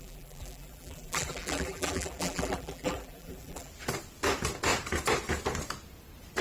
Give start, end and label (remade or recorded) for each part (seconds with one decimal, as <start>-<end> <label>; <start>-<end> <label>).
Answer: 0.0-3.7 remade; 3.7-6.4 recorded